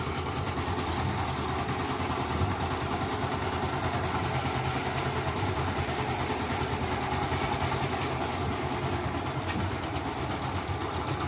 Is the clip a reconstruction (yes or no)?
no